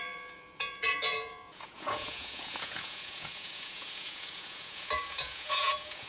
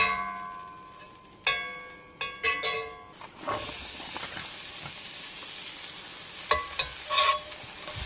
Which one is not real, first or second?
first